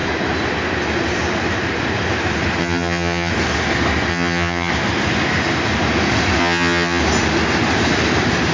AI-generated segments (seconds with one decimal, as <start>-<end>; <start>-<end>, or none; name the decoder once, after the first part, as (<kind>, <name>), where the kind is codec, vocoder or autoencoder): 2.6-3.3 (vocoder, HiFi-GAN); 4.1-4.7; 6.4-7.0